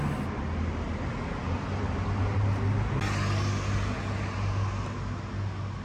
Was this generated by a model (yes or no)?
no